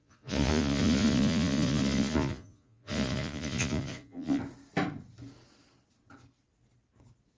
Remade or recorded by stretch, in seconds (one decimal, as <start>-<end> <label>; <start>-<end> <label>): 0.0-4.4 remade; 4.4-7.4 recorded

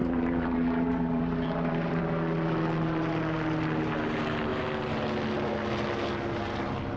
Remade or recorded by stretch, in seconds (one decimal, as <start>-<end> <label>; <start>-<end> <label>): 0.0-2.0 remade; 2.0-7.0 recorded